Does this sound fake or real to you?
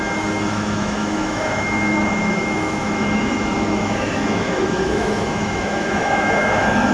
fake